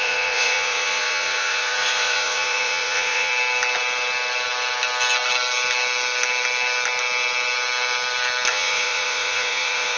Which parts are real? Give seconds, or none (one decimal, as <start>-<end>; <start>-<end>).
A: 3.3-8.5